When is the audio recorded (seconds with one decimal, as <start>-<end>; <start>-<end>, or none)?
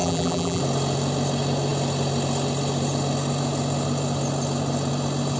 0.6-5.4